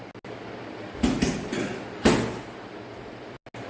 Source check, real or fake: real